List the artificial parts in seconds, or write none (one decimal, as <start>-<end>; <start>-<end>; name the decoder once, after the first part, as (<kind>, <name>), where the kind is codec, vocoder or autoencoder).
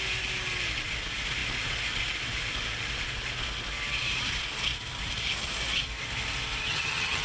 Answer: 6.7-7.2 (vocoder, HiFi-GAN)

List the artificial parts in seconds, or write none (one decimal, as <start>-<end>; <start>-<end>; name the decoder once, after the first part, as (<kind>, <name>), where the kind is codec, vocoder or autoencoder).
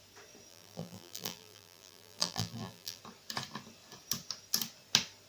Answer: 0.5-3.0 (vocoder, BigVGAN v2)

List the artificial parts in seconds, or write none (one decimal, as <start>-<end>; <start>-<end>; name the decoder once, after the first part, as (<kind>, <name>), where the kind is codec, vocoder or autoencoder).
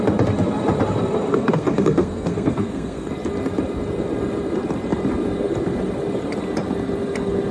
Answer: 1.3-3.1 (codec, SNAC)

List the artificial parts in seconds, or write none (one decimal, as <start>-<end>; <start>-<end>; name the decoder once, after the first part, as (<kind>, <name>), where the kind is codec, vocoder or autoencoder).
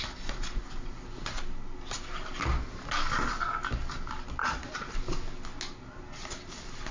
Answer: 4.4-4.9 (vocoder, Vocos)